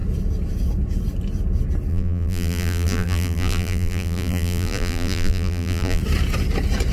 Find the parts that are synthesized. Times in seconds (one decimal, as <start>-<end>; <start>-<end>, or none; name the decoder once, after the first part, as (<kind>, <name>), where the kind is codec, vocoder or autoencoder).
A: 1.9-6.0 (vocoder, BigVGAN v2)